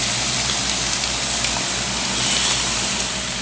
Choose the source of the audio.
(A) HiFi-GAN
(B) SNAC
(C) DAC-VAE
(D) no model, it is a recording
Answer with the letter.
D